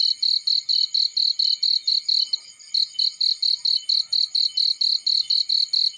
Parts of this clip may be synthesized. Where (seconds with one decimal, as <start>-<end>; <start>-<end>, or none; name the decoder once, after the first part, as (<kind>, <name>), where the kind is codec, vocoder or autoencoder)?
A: none